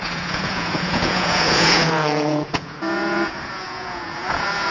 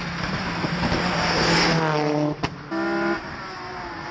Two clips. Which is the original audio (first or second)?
second